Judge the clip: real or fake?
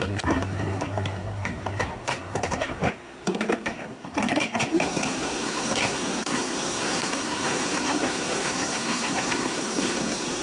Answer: fake